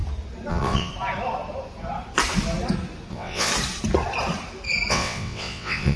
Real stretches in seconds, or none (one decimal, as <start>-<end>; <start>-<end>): 0.0-0.5; 0.9-3.1; 3.5-4.9